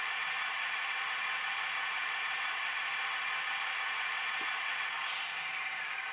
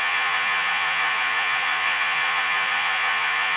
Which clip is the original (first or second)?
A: first